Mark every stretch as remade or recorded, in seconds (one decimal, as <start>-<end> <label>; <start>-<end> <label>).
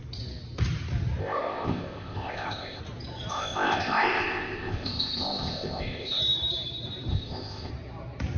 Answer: 0.0-1.2 recorded; 1.2-2.8 remade; 2.8-3.3 recorded; 3.3-6.2 remade; 6.2-7.1 recorded; 7.1-7.7 remade; 7.7-8.4 recorded